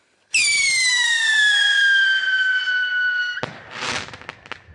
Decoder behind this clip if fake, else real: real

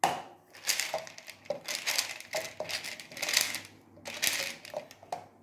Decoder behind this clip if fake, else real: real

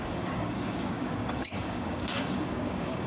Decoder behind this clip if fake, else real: fake, codec, DAC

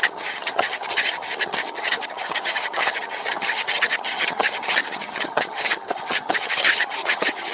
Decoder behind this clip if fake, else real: fake, vocoder, HiFi-GAN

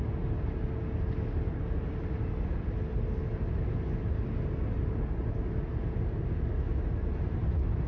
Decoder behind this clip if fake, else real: real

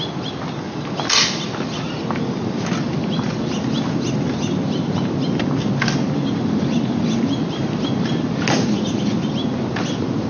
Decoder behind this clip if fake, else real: real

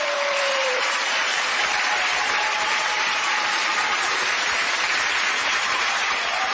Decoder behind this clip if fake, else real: fake, vocoder, BigVGAN v2